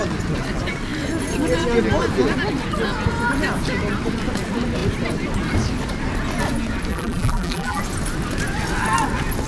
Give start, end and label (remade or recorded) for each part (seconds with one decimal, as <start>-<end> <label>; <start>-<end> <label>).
0.0-6.9 recorded; 6.9-7.8 remade; 7.8-9.5 recorded